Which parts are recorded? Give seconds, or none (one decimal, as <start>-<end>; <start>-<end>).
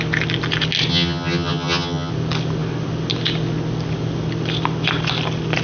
0.0-0.9; 2.1-5.6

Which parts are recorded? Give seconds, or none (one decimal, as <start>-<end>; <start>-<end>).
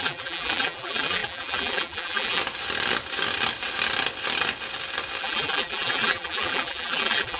2.4-5.2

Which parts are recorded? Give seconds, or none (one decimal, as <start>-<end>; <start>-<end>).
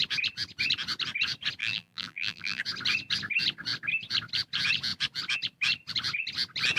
0.0-1.6; 2.6-6.8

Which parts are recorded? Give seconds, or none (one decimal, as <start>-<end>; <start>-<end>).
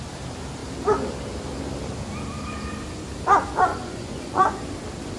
0.0-3.7; 4.6-5.2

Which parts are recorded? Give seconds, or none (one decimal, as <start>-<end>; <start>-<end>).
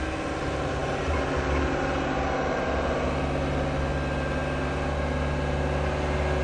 0.0-6.4